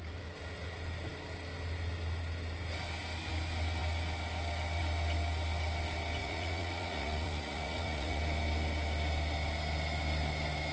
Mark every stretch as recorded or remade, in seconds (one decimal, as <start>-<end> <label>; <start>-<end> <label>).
0.0-6.2 recorded; 6.2-8.2 remade; 8.2-10.7 recorded